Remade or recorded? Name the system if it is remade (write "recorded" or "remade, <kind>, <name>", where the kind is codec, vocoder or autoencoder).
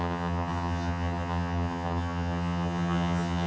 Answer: remade, vocoder, HiFi-GAN